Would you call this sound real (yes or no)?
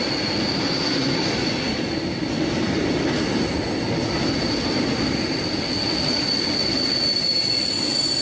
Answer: yes